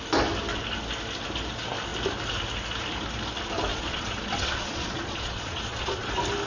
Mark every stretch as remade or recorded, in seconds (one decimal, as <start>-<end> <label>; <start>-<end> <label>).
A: 0.0-3.7 recorded; 3.7-6.1 remade; 6.1-6.5 recorded